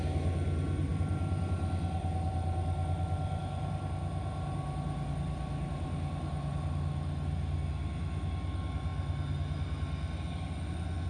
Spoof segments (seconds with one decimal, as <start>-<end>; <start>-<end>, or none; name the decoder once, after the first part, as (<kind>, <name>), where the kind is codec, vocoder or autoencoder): none